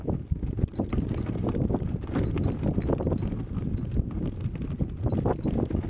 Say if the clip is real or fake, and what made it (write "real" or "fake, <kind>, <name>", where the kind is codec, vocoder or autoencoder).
real